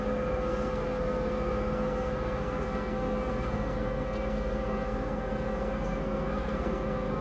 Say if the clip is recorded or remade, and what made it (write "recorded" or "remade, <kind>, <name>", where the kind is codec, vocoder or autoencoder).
remade, codec, SNAC